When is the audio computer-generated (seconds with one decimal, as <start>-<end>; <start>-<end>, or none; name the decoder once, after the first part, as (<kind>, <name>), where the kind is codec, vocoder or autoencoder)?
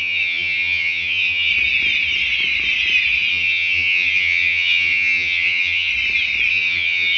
0.0-1.5 (vocoder, HiFi-GAN); 3.3-5.9; 6.5-7.2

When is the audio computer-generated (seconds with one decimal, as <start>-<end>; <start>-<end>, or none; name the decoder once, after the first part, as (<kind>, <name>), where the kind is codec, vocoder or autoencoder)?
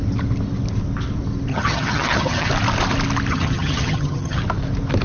1.5-2.5 (vocoder, HiFi-GAN); 3.3-4.4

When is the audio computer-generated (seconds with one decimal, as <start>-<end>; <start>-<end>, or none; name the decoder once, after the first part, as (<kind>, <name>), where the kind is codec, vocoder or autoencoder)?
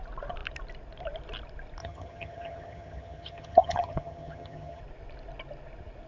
1.8-4.8 (vocoder, HiFi-GAN)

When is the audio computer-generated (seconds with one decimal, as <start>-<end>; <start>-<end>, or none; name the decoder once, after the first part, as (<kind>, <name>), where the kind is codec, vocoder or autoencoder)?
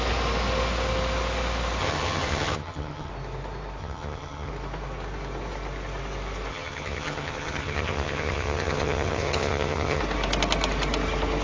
1.8-3.1 (vocoder, HiFi-GAN); 3.8-4.5; 6.5-10.0